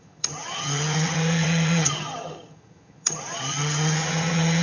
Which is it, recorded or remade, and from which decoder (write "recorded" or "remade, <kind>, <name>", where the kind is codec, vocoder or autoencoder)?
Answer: remade, vocoder, HiFi-GAN